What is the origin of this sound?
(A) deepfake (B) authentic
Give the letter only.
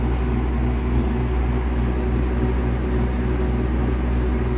B